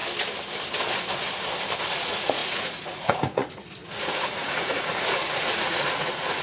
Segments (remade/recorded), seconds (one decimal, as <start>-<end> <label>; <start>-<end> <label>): 0.0-1.9 recorded; 1.9-6.4 remade